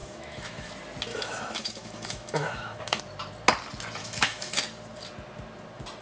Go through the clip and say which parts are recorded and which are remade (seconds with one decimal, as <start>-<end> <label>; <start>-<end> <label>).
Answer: 0.0-0.7 remade; 0.7-1.1 recorded; 1.1-3.0 remade; 3.0-4.0 recorded; 4.0-4.6 remade; 4.6-6.0 recorded